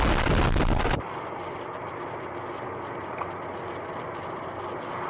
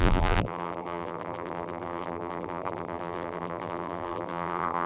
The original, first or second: first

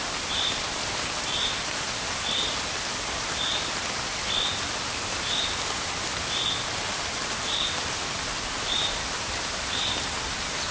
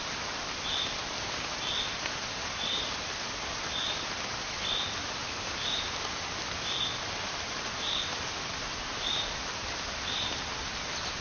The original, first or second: second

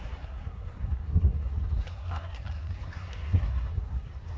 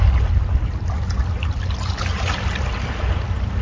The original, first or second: second